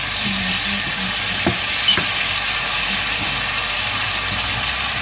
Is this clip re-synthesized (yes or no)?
no